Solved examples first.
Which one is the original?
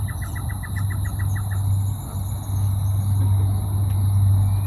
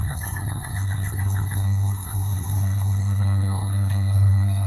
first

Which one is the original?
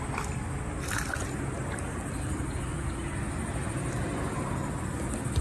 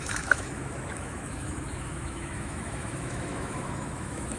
first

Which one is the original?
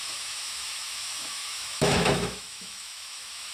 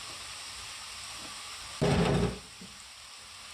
second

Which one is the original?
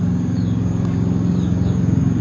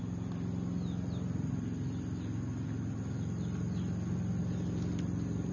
second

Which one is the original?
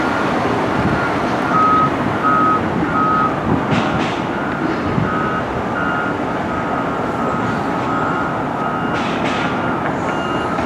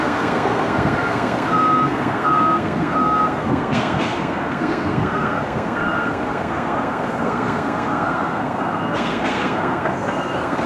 first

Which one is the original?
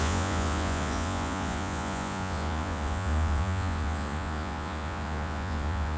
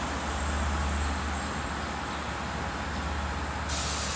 second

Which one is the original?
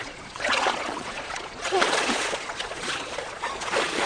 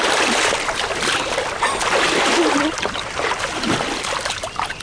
second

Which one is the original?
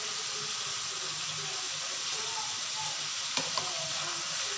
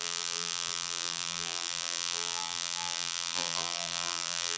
first